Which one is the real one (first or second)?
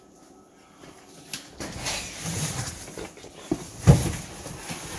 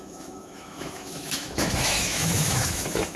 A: first